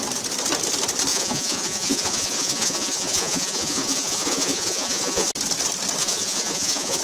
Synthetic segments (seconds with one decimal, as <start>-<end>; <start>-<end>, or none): 1.1-5.3; 6.0-7.0